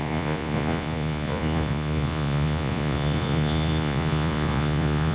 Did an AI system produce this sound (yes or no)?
yes